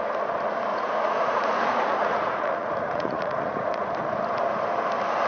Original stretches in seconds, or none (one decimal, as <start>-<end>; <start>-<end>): 0.0-0.7; 3.9-5.3